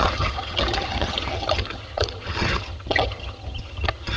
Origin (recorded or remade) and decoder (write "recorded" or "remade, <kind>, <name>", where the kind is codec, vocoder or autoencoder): remade, vocoder, HiFi-GAN